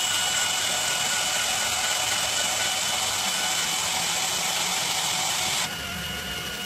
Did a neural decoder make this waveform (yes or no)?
no